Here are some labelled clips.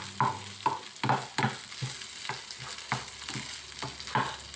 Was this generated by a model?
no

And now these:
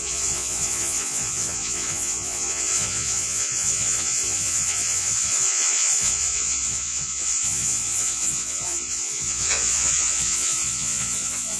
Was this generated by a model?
yes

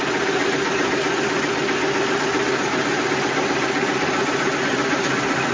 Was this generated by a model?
no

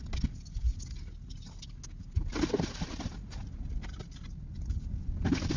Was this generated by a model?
no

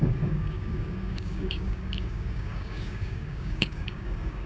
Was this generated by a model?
yes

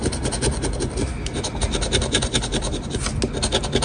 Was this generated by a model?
no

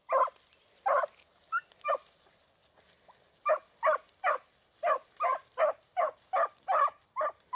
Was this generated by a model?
no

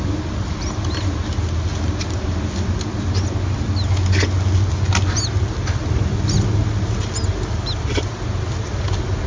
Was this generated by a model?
no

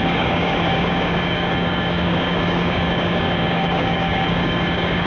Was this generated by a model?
yes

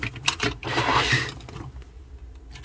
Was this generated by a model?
no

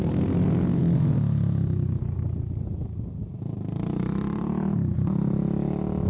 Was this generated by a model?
no